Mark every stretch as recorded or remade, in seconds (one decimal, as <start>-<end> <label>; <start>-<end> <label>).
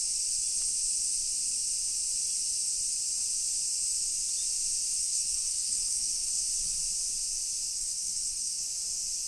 0.0-5.0 recorded; 5.0-6.4 remade; 6.4-7.7 recorded; 7.7-8.6 remade; 8.6-9.3 recorded